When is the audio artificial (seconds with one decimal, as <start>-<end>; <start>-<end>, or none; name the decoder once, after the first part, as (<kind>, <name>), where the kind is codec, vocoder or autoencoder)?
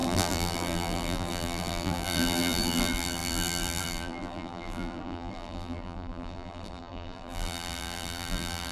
0.0-8.7 (vocoder, BigVGAN v2)